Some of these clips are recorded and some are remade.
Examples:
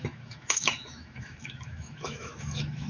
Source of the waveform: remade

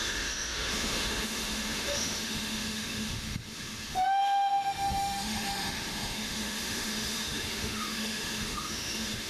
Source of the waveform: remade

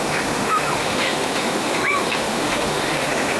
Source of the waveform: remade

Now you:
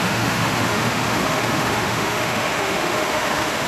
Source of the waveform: remade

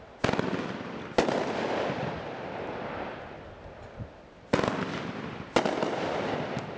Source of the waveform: recorded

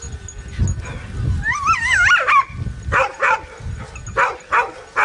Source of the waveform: recorded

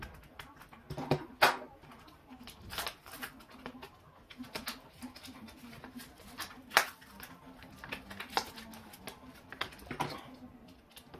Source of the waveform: recorded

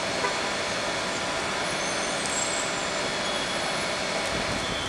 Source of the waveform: recorded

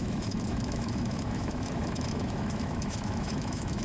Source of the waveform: remade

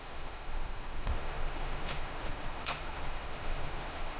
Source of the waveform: remade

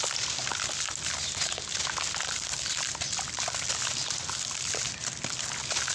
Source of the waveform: recorded